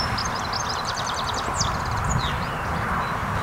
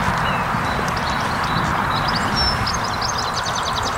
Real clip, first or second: second